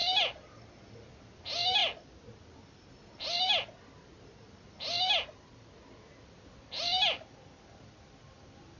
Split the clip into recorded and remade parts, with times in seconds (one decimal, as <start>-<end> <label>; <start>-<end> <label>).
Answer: 0.0-8.8 recorded